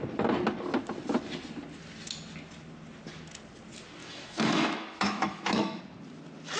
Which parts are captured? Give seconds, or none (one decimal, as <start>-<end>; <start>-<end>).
0.0-4.0; 5.8-6.6